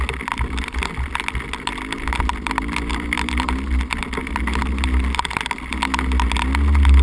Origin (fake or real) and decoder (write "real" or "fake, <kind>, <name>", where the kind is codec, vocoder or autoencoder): real